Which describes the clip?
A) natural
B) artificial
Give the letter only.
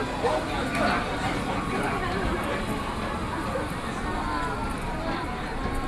A